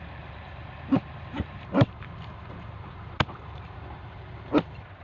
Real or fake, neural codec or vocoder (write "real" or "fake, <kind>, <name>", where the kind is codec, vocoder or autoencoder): fake, vocoder, BigVGAN v2